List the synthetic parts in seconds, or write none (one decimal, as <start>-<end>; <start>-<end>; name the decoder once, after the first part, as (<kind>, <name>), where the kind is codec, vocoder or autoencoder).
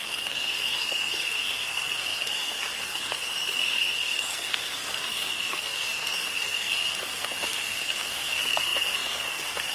0.0-9.7 (codec, SNAC)